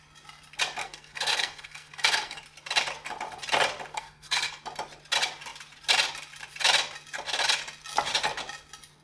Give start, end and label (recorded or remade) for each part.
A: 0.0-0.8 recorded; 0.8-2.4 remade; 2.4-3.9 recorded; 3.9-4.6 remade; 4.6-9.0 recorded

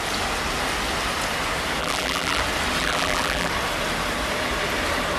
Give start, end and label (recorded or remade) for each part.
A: 0.0-1.8 recorded; 1.8-2.4 remade; 2.4-2.8 recorded; 2.8-3.5 remade; 3.5-5.2 recorded

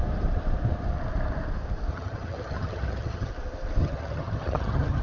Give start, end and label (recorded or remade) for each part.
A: 0.0-1.9 recorded; 1.9-3.3 remade; 3.3-3.8 recorded; 3.8-5.0 remade

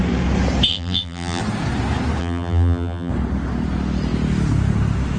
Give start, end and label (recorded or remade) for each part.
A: 0.0-0.7 recorded; 0.7-1.4 remade; 1.4-2.2 recorded; 2.2-3.1 remade; 3.1-5.2 recorded

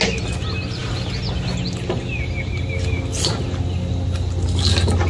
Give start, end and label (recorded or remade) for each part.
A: 0.0-5.1 recorded

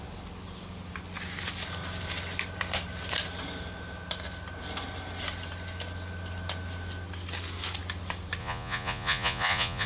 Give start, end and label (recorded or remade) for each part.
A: 0.0-8.4 recorded; 8.4-9.9 remade